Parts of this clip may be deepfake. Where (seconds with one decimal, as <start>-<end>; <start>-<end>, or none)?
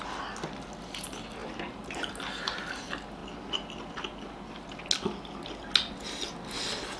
none